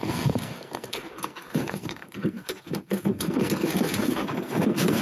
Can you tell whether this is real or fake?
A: fake